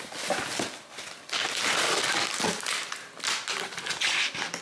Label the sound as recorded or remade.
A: recorded